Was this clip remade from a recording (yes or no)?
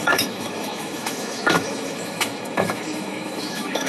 yes